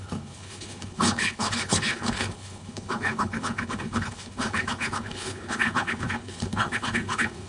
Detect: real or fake fake